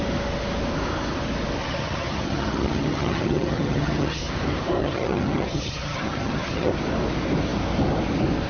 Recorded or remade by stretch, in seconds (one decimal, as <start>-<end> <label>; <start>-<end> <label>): 0.0-1.6 recorded; 1.6-4.2 remade; 4.2-4.8 recorded; 4.8-6.7 remade; 6.7-8.5 recorded